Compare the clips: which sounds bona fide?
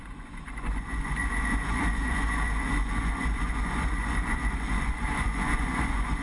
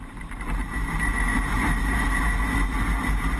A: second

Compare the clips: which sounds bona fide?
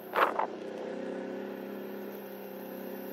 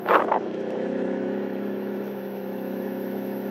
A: first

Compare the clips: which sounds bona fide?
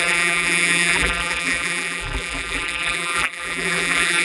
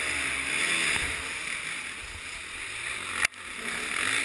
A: second